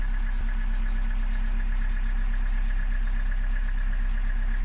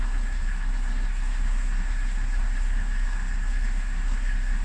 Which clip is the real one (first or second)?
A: first